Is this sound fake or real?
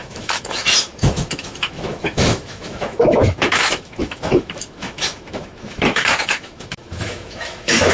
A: fake